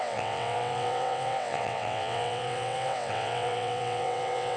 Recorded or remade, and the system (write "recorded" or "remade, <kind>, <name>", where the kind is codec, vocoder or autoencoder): remade, vocoder, WaveNeXt